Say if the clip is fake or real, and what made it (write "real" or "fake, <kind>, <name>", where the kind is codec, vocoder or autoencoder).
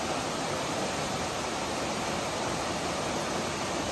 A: real